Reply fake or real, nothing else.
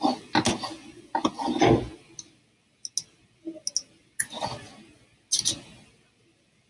real